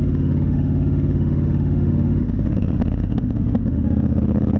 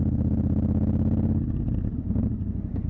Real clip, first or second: second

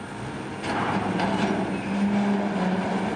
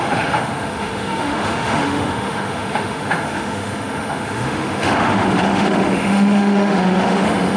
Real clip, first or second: first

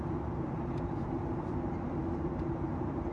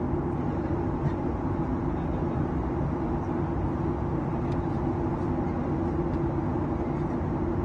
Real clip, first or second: second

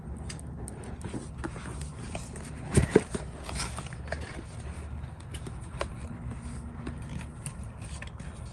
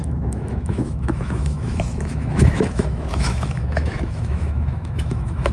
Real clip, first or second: first